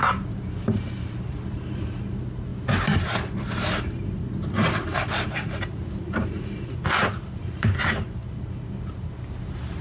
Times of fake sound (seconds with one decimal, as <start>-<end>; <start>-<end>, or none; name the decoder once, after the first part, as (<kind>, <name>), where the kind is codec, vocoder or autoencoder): 0.0-8.2 (vocoder, BigVGAN v2); 8.8-9.8